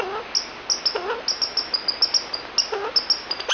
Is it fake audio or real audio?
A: real